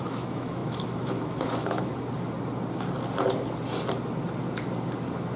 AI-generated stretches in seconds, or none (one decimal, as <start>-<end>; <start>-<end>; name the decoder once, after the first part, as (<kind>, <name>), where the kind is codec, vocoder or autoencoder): 0.0-1.9 (autoencoder, DAC-VAE)